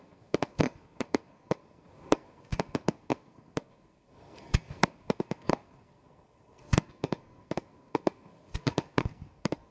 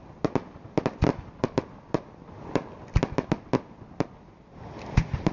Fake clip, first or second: first